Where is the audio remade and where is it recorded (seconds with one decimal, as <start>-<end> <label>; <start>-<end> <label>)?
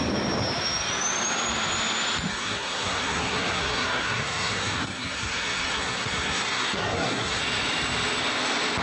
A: 0.0-2.3 recorded; 2.3-7.4 remade; 7.4-8.8 recorded